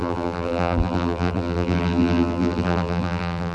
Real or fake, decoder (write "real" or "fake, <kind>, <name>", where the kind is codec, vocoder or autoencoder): fake, vocoder, BigVGAN v2